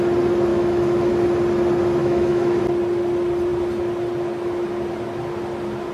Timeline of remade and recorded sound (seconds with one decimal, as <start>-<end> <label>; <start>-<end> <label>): 0.0-0.5 recorded; 0.5-1.1 remade; 1.1-2.0 recorded; 2.0-2.6 remade; 2.6-5.9 recorded